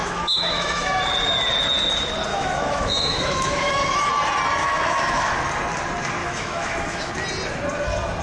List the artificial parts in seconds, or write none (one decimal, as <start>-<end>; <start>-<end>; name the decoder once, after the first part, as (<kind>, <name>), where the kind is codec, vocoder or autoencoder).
0.0-1.0 (autoencoder, DAC-VAE); 2.3-4.1; 4.6-5.4; 6.2-7.1